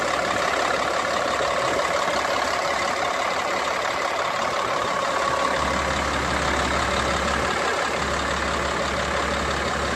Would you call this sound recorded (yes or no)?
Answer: yes